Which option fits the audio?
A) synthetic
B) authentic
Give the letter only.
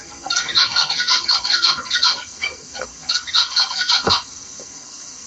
A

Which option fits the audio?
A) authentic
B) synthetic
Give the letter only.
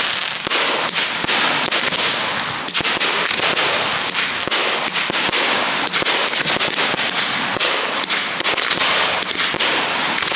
A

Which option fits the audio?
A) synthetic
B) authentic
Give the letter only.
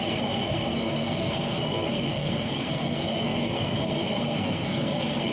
A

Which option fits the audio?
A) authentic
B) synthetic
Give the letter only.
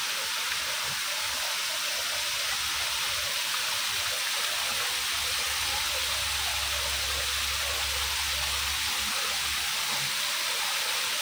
A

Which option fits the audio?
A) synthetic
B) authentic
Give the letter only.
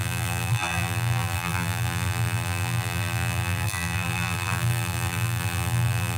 A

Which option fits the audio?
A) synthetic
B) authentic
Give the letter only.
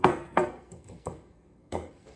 A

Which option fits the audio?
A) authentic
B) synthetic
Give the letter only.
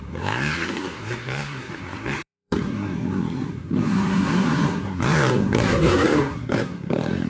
B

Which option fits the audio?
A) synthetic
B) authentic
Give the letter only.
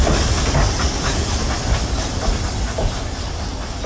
B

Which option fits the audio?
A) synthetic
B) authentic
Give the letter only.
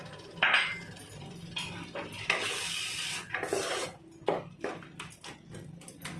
B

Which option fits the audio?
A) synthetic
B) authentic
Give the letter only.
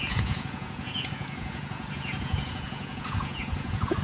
A